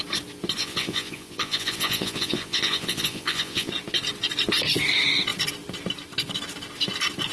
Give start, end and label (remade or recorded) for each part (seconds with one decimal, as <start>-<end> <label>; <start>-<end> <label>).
0.0-0.6 recorded; 0.6-3.7 remade; 3.7-7.3 recorded